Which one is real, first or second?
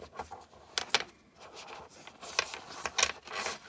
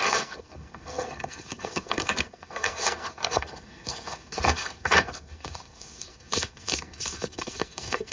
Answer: first